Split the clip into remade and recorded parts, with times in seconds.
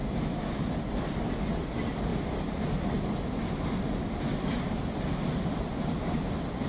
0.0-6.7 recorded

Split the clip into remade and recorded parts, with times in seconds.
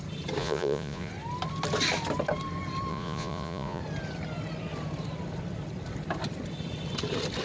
0.0-0.4 recorded; 0.4-1.1 remade; 1.1-2.9 recorded; 2.9-3.8 remade; 3.8-7.4 recorded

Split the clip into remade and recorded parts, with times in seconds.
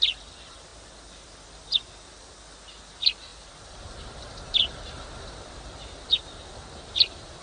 0.0-0.7 remade; 0.7-2.8 recorded; 2.8-7.4 remade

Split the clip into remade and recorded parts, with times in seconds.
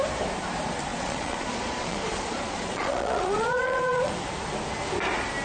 0.0-0.9 recorded; 0.9-4.1 remade; 4.1-5.4 recorded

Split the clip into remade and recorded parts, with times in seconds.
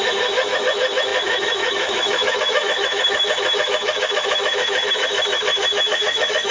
0.0-6.5 remade